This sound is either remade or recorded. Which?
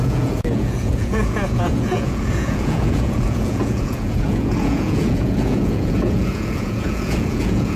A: remade